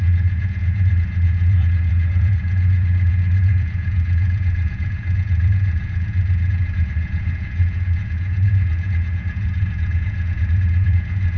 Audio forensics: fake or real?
fake